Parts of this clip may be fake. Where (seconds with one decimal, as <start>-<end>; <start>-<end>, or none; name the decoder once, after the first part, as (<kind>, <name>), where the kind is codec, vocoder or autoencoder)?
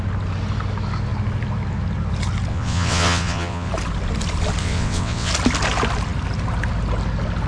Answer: 2.5-3.7 (vocoder, WaveNeXt); 4.6-5.3